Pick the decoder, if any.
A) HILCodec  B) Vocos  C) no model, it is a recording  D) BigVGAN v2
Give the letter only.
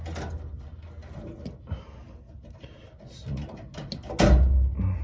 C